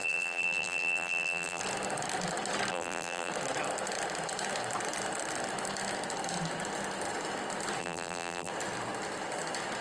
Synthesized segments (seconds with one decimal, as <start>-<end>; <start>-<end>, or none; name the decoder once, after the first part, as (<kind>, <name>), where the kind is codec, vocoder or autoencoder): 0.0-1.6 (vocoder, BigVGAN v2); 2.7-3.3; 7.8-8.5